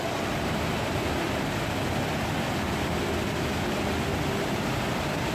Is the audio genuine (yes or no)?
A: yes